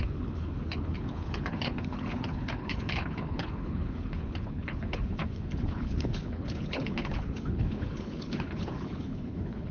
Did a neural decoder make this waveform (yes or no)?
yes